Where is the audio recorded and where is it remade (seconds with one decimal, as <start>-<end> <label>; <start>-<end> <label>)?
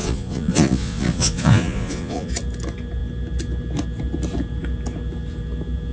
0.0-2.3 remade; 2.3-5.9 recorded